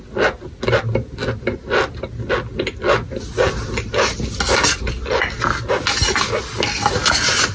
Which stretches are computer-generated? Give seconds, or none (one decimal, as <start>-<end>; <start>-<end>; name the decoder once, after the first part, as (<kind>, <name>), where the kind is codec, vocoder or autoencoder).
none